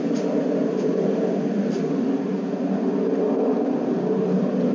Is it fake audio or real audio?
real